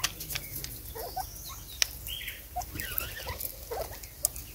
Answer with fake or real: real